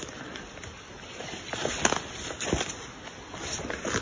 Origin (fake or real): real